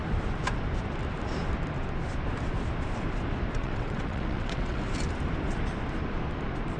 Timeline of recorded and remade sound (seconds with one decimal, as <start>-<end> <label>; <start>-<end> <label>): 0.0-3.6 recorded; 3.6-4.8 remade; 4.8-6.8 recorded